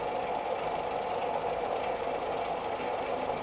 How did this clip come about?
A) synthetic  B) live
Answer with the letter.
B